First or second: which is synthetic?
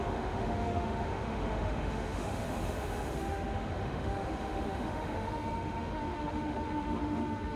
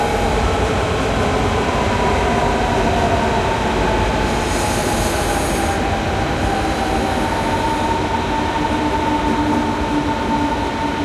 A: first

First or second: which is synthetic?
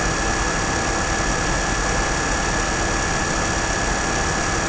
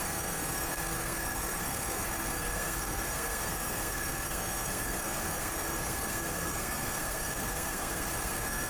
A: second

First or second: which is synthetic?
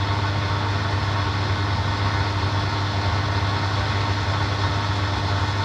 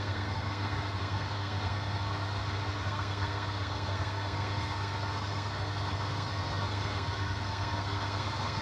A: second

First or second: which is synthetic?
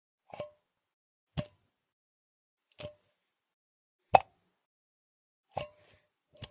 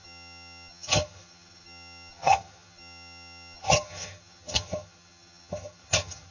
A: second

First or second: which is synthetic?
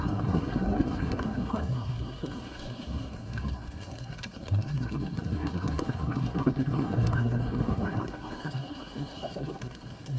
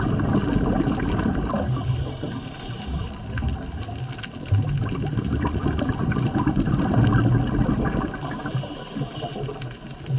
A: first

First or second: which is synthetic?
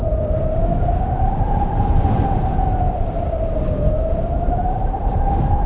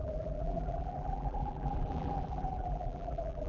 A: second